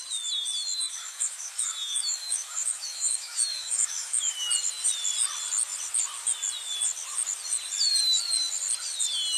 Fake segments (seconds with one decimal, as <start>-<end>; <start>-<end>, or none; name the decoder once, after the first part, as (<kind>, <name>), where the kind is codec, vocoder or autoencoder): 0.8-4.5 (autoencoder, DAC-VAE)